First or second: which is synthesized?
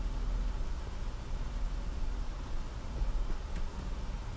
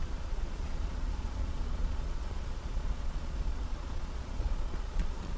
second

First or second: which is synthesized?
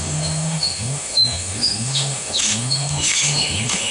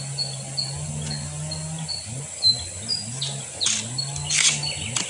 first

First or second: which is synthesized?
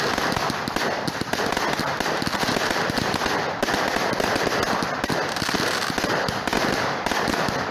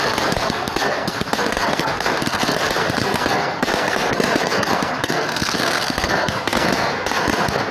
second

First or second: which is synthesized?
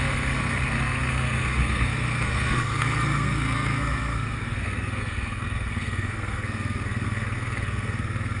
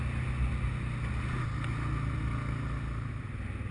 first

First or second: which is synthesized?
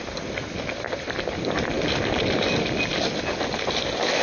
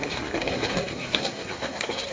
second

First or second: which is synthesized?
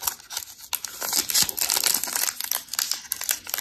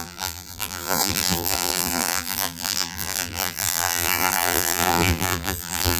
second